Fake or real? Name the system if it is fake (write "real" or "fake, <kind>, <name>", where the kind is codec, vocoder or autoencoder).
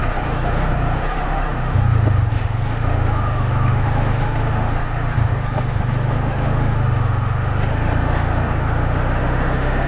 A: fake, autoencoder, DAC-VAE